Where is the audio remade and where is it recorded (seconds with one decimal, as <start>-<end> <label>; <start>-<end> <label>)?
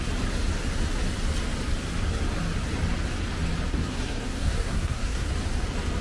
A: 0.0-3.7 recorded; 3.7-5.3 remade; 5.3-6.0 recorded